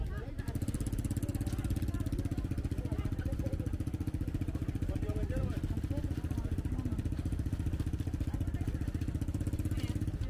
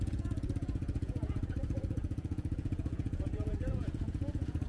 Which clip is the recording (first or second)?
first